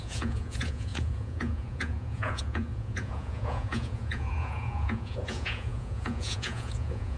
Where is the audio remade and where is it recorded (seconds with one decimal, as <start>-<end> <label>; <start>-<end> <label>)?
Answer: 0.0-7.2 remade